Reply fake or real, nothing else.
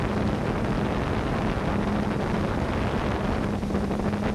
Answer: real